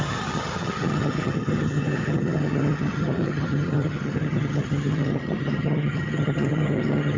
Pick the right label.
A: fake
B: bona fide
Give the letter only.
A